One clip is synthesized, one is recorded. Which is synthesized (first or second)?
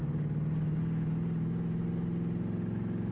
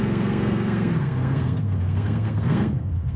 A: second